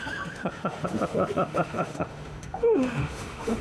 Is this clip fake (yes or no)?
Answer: yes